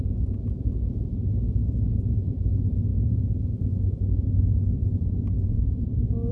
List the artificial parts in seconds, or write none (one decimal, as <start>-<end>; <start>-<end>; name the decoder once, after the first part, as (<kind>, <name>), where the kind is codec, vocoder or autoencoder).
none